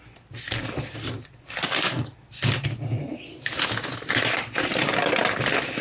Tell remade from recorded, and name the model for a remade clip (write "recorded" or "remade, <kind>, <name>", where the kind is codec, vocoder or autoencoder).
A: recorded